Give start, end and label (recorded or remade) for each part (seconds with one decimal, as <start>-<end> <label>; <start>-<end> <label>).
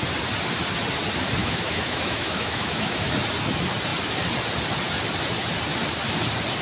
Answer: 0.0-1.4 recorded; 1.4-3.1 remade; 3.1-6.6 recorded